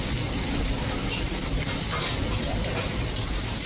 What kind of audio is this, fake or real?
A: real